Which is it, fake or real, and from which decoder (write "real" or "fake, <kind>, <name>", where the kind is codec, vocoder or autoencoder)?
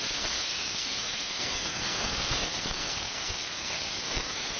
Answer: fake, codec, SNAC